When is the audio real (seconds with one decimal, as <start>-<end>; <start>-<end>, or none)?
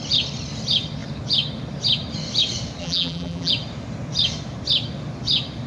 0.0-2.8; 3.5-5.7